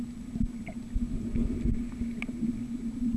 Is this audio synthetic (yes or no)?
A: no